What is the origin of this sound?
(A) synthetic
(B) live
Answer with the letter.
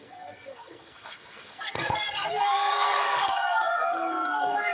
A